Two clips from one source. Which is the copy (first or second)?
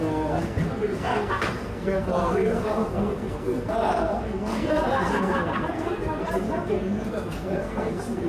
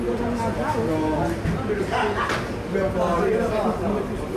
first